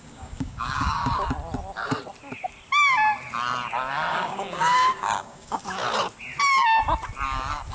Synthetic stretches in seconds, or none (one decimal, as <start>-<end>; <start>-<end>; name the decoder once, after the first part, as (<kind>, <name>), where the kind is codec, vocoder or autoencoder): 0.0-1.0 (codec, DAC); 4.1-5.6